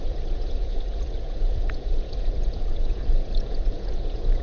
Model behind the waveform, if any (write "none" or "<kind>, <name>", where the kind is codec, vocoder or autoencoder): vocoder, Vocos